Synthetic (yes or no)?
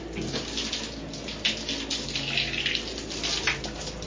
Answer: no